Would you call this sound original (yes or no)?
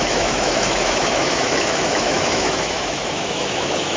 no